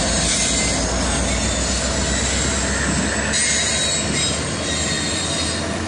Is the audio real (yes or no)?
yes